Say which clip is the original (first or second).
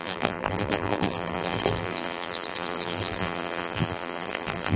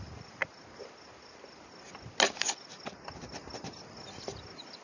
second